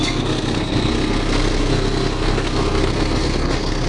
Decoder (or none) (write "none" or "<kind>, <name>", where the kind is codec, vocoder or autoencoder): codec, SNAC